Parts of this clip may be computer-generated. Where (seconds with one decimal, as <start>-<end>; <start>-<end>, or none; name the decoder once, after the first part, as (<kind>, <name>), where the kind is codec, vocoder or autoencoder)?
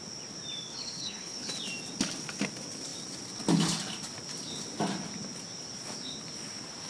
0.7-1.5 (codec, HILCodec)